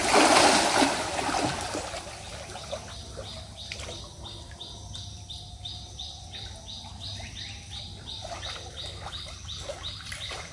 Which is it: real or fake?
real